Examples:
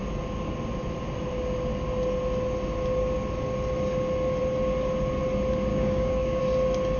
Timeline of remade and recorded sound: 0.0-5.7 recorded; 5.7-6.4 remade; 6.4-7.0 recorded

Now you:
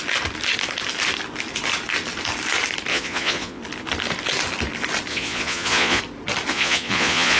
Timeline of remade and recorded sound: 0.0-2.9 recorded; 2.9-3.6 remade; 3.6-5.1 recorded; 5.1-6.0 remade; 6.0-6.5 recorded; 6.5-7.4 remade

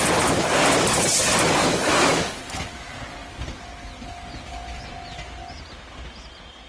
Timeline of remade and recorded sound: 0.0-1.6 recorded; 1.6-2.4 remade; 2.4-6.7 recorded

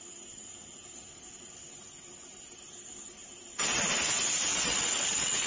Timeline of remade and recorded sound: 0.0-4.5 recorded; 4.5-5.5 remade